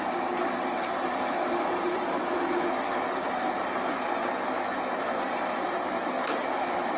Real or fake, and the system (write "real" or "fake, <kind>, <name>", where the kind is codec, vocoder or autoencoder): fake, vocoder, BigVGAN v2